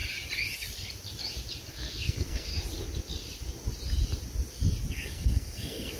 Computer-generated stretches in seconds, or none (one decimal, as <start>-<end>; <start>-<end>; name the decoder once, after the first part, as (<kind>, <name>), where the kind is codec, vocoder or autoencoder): 1.7-2.5 (codec, SNAC); 4.9-6.0